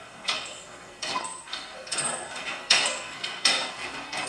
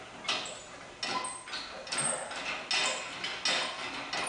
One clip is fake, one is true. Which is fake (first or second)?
first